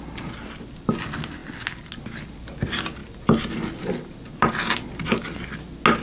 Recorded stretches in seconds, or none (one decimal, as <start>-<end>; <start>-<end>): 0.0-6.0